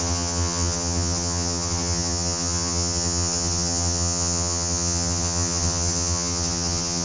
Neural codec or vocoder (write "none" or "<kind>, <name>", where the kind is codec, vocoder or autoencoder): vocoder, HiFi-GAN